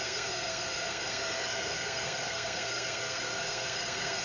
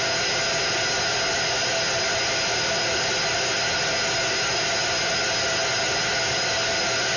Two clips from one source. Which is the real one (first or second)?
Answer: second